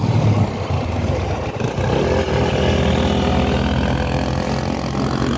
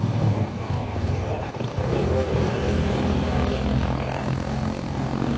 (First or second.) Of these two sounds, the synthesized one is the second